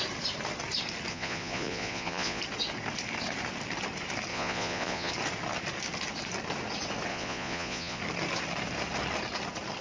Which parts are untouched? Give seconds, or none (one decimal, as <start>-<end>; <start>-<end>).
0.0-1.1; 2.4-4.3; 5.1-7.1; 8.0-9.8